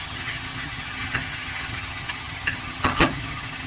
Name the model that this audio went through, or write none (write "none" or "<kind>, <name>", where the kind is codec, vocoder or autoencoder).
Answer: vocoder, HiFi-GAN